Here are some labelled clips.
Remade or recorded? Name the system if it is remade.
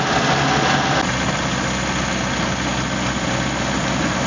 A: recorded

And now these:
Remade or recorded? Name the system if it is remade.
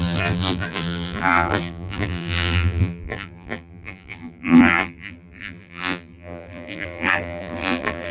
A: remade, vocoder, BigVGAN v2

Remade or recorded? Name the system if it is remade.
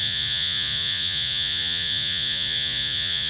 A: remade, vocoder, Vocos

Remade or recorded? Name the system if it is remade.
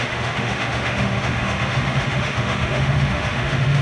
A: remade, autoencoder, DAC-VAE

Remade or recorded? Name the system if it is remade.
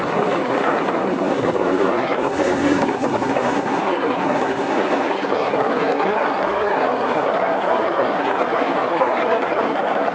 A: remade, codec, SNAC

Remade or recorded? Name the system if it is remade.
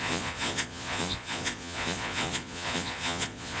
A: remade, vocoder, Vocos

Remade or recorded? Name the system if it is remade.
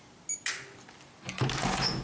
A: recorded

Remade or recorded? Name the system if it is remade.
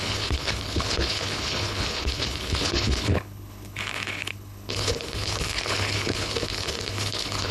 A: remade, codec, HILCodec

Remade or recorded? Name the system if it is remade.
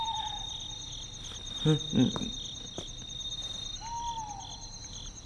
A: recorded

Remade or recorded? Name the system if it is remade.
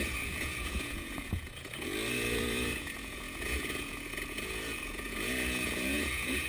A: remade, vocoder, Vocos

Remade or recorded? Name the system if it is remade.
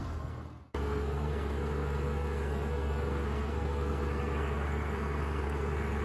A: remade, codec, SNAC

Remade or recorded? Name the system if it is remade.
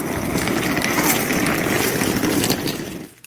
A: recorded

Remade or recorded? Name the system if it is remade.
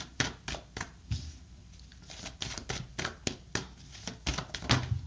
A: recorded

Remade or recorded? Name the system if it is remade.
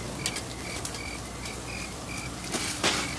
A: recorded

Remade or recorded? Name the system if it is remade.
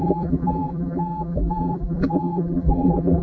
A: remade, vocoder, BigVGAN v2